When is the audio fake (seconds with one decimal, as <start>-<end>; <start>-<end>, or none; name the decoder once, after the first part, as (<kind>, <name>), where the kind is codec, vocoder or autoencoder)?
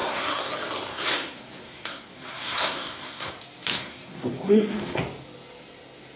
0.0-0.5 (codec, SNAC); 0.9-3.3; 3.7-5.0